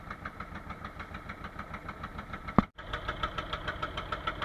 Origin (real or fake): real